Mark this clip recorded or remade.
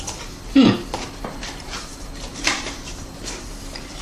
remade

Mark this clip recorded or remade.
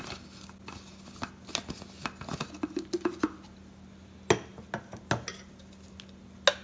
recorded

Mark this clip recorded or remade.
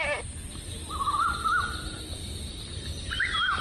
recorded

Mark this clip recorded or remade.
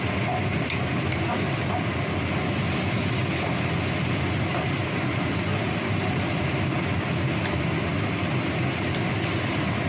recorded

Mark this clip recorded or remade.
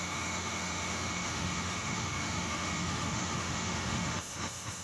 remade